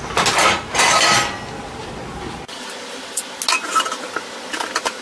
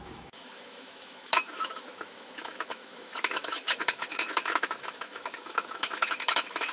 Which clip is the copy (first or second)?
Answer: second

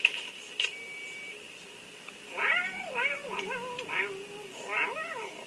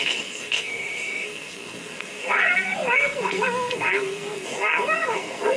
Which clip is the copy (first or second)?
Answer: second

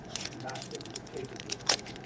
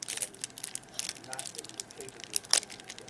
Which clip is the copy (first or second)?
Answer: first